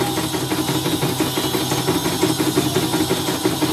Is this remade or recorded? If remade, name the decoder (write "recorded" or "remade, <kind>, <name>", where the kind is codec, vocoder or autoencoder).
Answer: recorded